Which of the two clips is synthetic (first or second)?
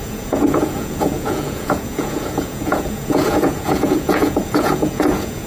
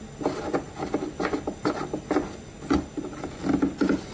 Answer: first